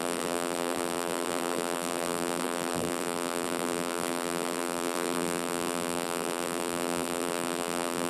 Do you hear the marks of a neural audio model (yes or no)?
yes